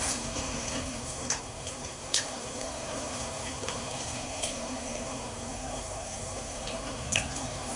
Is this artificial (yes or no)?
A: yes